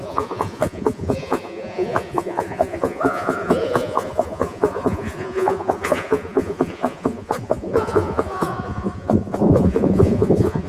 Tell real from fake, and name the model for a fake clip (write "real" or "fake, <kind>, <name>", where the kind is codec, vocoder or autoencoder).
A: fake, vocoder, Vocos